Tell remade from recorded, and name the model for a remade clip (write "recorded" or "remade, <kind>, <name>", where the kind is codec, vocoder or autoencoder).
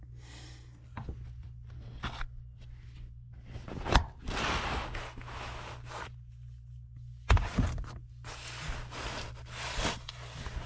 recorded